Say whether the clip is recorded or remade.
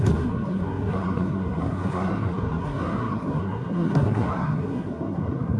remade